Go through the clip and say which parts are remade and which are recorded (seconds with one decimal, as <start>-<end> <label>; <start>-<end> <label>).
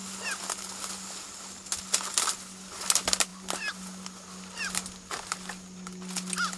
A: 0.0-6.6 recorded